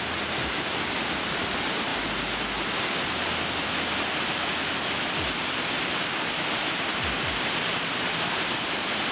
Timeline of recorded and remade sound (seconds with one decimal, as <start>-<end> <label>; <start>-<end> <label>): 0.0-1.9 remade; 1.9-6.3 recorded; 6.3-9.1 remade